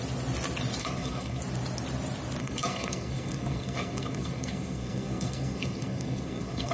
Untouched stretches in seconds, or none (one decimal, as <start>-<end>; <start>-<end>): 0.0-0.8; 1.4-2.4